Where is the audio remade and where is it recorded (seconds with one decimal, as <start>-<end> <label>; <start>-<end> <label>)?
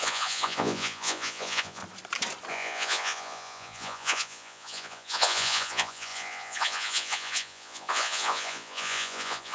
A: 0.0-1.8 remade; 1.8-2.5 recorded; 2.5-9.5 remade